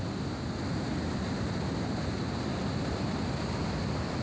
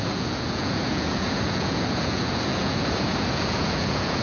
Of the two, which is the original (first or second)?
first